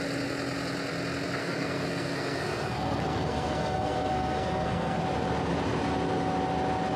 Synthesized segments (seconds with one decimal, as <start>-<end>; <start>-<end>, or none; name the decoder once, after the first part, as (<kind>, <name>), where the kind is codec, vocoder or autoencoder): 1.4-5.0 (codec, SNAC)